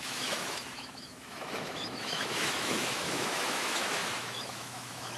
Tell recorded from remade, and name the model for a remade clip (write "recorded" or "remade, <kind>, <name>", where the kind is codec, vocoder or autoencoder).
remade, autoencoder, DAC-VAE